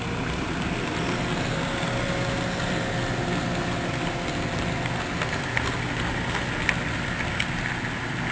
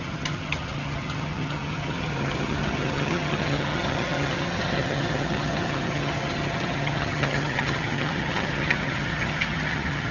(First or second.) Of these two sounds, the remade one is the second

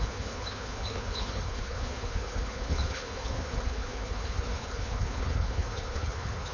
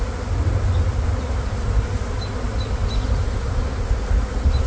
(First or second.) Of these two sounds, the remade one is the first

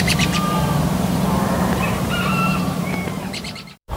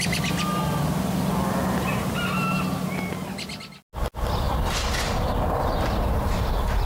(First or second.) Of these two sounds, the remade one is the first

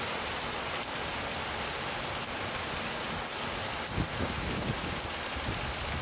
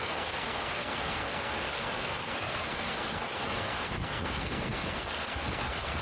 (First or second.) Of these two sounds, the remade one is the second